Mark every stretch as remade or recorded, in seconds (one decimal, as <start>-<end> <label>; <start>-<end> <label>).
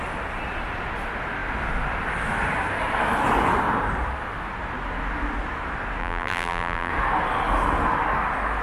0.0-6.0 recorded; 6.0-6.9 remade; 6.9-8.6 recorded